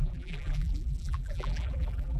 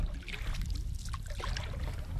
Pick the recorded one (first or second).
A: second